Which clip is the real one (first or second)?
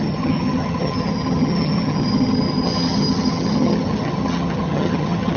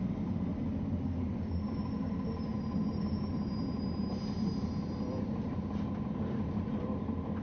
second